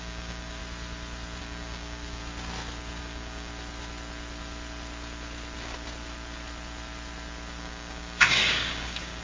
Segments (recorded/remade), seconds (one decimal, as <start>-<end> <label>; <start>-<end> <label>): 0.0-0.6 remade; 0.6-1.4 recorded; 1.4-2.2 remade; 2.2-3.0 recorded; 3.0-3.5 remade; 3.5-7.6 recorded; 7.6-9.2 remade